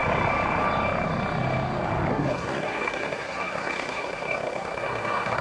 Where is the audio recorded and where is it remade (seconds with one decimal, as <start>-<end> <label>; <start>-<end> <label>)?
0.0-2.1 recorded; 2.1-5.4 remade